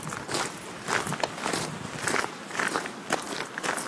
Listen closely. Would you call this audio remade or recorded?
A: recorded